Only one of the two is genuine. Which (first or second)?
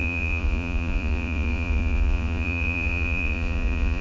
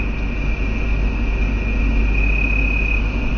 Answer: second